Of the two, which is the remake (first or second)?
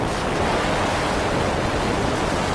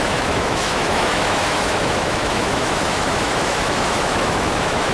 second